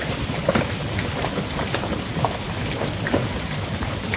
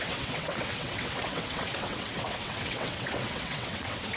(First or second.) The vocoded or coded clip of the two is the second